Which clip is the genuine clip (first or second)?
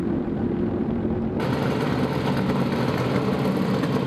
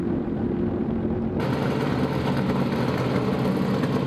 second